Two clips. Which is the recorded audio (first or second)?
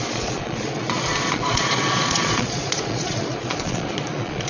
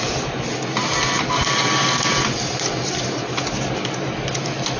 second